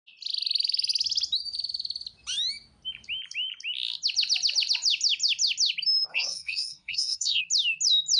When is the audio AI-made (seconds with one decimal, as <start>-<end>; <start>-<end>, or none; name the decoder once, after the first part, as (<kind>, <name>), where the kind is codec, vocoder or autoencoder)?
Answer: 6.1-7.4 (codec, SNAC)